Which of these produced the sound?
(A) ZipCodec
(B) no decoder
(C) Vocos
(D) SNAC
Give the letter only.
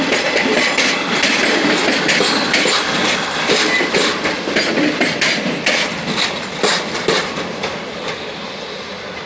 B